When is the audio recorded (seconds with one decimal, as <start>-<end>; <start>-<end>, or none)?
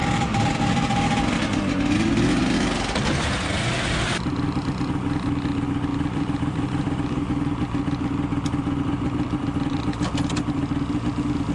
1.7-5.9; 9.8-11.5